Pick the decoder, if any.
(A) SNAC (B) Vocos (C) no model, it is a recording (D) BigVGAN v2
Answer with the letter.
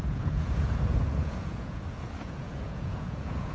B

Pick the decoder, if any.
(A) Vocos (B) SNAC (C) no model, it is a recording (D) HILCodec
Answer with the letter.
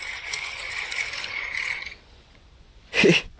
A